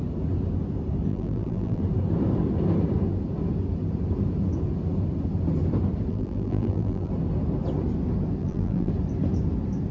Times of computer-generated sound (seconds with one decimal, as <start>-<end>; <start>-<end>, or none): 1.1-1.8; 6.1-7.1; 8.4-8.9